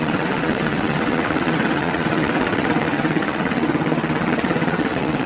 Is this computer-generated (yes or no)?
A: yes